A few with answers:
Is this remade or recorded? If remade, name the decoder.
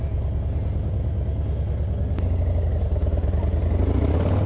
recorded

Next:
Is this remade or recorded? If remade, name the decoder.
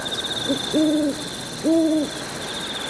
recorded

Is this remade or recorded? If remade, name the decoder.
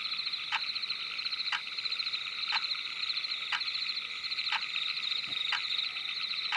recorded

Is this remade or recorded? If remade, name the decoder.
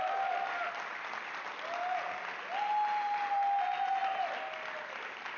recorded